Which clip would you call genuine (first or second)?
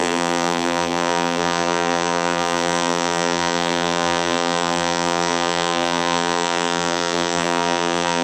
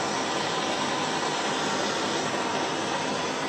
second